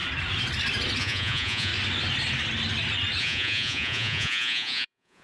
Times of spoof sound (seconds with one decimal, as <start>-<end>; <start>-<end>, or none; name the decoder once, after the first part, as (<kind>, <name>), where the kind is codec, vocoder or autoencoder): 1.0-1.7 (vocoder, Vocos); 3.2-5.2